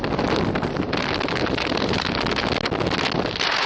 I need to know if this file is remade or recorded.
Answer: recorded